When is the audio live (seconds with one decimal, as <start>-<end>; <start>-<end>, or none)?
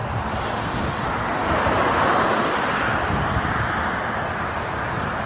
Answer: 0.0-5.3